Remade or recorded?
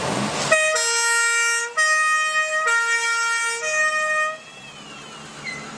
recorded